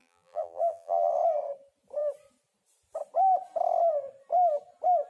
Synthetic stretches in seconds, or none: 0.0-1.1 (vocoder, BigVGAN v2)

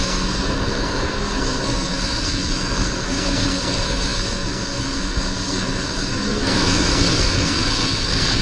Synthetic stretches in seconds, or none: 0.0-8.4 (codec, SNAC)

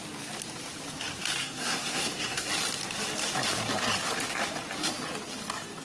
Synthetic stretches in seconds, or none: 1.4-2.5 (codec, SNAC)

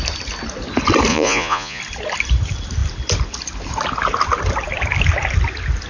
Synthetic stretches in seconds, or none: 1.1-1.8 (vocoder, Vocos)

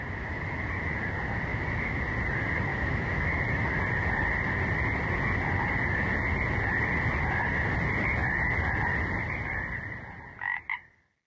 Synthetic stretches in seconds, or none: 1.5-2.0 (autoencoder, DAC-VAE); 2.7-3.4